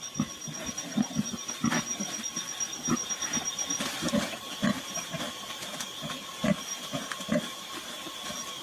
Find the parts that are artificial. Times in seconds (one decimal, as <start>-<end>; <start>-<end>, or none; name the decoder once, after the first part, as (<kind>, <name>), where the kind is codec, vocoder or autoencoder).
none